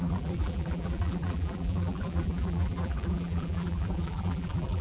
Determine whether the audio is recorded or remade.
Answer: remade